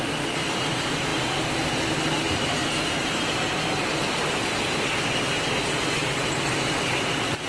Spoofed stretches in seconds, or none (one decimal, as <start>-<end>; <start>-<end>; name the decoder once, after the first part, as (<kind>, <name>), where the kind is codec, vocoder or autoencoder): none